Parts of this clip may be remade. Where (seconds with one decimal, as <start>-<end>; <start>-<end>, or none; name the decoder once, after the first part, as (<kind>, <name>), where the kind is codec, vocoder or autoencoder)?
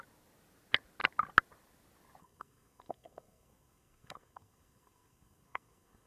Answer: 2.2-6.1 (codec, SNAC)